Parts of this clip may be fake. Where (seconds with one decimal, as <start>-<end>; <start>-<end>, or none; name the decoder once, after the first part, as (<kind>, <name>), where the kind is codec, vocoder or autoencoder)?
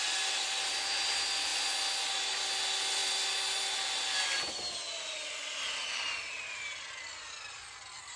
none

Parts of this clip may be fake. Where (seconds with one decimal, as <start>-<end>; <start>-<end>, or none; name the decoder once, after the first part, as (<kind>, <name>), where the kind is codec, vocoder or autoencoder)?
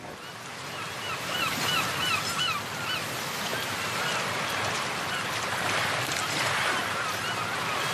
3.5-6.6 (vocoder, BigVGAN v2)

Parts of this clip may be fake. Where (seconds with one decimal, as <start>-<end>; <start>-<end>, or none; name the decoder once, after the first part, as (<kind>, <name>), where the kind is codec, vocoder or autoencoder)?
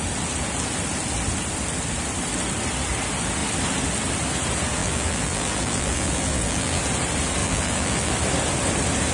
4.8-6.8 (vocoder, BigVGAN v2); 7.4-8.1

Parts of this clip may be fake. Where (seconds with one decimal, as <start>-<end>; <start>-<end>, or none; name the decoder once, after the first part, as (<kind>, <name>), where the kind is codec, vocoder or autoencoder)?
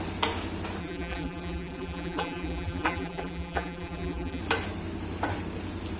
0.8-4.4 (vocoder, BigVGAN v2)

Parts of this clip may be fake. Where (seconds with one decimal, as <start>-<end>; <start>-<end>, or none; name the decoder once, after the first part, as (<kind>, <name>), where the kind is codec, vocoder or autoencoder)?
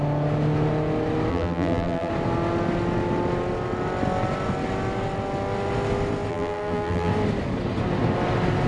1.3-2.1 (vocoder, BigVGAN v2); 6.3-7.1